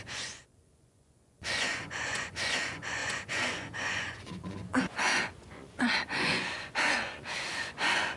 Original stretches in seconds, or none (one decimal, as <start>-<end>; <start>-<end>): none